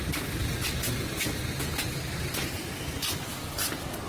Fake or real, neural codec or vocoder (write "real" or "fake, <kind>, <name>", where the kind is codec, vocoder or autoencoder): real